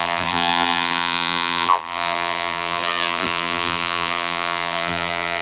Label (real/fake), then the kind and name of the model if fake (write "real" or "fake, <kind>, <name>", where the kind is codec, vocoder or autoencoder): fake, vocoder, BigVGAN v2